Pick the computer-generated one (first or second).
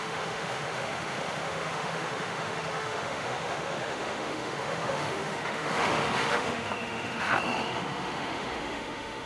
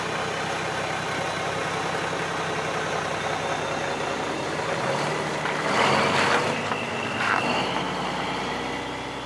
first